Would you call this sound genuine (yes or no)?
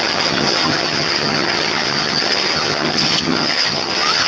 no